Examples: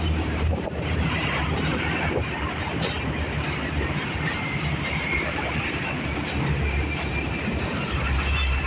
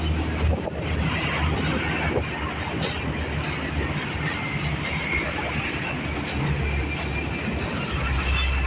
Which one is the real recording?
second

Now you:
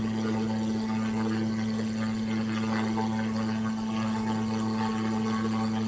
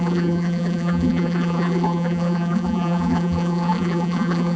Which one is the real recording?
first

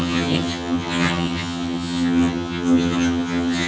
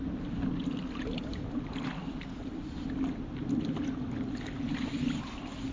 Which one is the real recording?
second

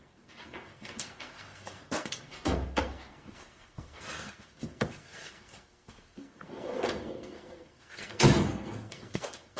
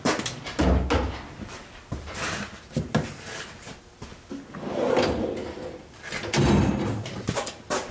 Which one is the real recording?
second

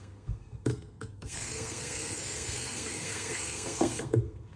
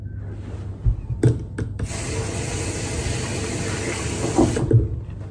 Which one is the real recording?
second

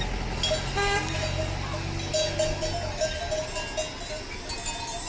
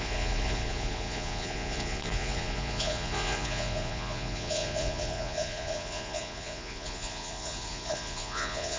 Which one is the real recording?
first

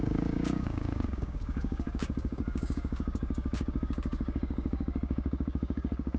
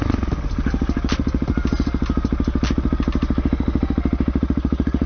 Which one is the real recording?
second